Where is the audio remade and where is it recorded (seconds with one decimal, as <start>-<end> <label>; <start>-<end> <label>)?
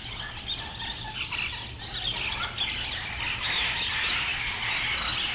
0.0-5.3 recorded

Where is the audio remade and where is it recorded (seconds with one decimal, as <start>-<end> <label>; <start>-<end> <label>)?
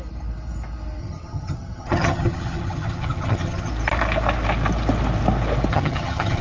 0.0-1.0 recorded; 1.0-3.7 remade; 3.7-5.7 recorded; 5.7-6.4 remade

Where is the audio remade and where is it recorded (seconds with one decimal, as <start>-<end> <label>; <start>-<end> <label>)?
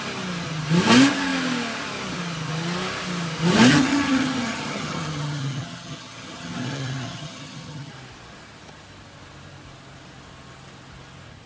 0.0-3.7 recorded; 3.7-7.9 remade; 7.9-11.5 recorded